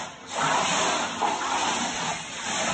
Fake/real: real